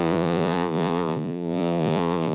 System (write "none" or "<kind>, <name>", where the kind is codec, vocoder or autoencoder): vocoder, Vocos